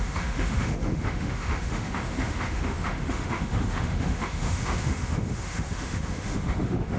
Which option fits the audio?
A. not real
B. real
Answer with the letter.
A